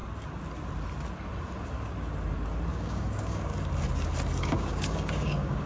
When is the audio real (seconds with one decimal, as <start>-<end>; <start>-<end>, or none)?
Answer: 0.0-2.7; 3.5-4.4